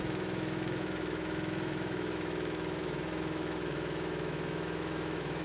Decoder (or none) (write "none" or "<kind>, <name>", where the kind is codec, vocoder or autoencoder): autoencoder, DAC-VAE